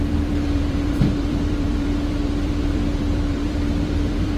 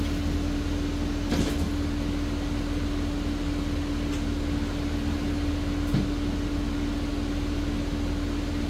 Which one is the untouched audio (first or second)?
second